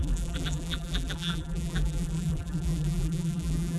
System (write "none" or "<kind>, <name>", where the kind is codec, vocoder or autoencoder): vocoder, BigVGAN v2